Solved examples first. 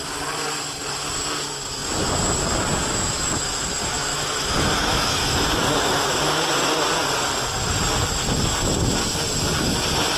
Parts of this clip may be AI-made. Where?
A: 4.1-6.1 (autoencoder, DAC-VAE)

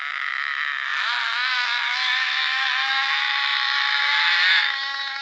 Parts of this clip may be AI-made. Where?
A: 0.0-5.2 (autoencoder, DAC-VAE)

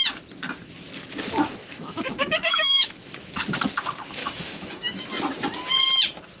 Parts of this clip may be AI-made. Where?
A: 1.6-3.3 (autoencoder, DAC-VAE); 4.2-5.0

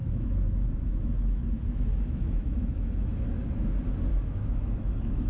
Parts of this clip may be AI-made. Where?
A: 0.0-3.2 (autoencoder, DAC-VAE); 4.1-5.3

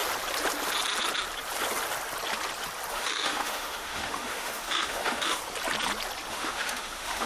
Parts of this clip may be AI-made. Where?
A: 2.9-5.4 (autoencoder, DAC-VAE); 6.3-7.3

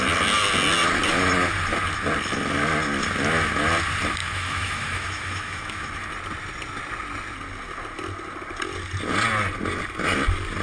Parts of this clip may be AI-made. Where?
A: 4.2-5.9 (autoencoder, DAC-VAE)